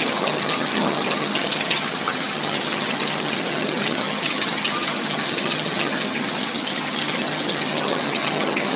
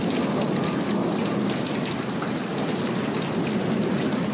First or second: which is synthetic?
first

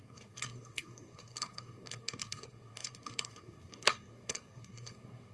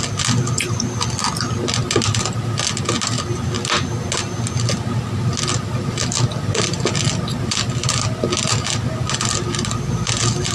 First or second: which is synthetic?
first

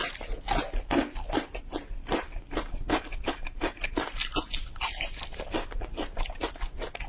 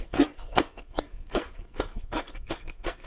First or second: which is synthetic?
second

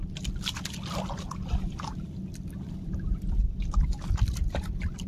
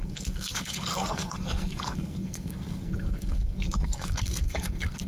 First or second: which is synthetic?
second